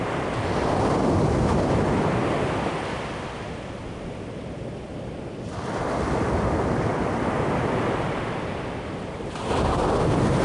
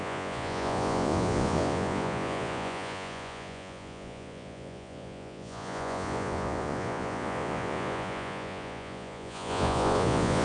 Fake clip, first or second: second